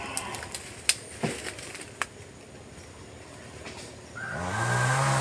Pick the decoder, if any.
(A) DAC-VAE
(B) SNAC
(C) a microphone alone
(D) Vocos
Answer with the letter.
C